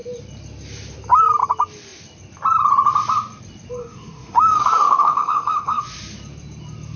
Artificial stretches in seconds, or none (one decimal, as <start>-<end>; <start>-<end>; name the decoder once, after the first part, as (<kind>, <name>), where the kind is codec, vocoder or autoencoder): 3.8-5.8 (autoencoder, DAC-VAE)

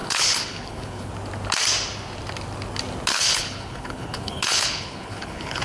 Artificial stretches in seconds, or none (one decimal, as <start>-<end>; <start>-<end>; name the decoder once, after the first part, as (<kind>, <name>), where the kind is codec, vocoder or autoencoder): 0.0-1.1 (codec, HILCodec); 3.1-5.6

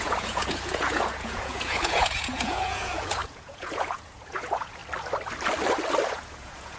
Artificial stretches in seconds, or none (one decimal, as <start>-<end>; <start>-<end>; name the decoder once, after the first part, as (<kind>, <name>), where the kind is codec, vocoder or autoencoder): 0.0-4.8 (vocoder, Vocos); 6.1-6.8